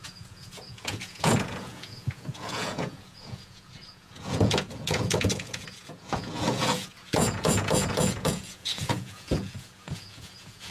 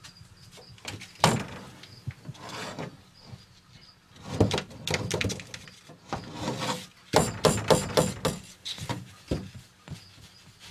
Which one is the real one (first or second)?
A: second